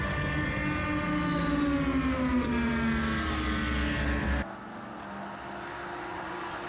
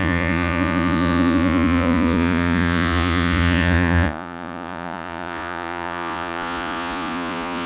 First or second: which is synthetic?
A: second